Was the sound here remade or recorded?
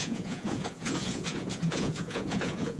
remade